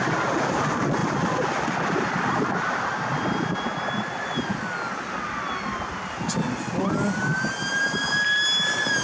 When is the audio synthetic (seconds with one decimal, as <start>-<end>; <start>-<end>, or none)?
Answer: none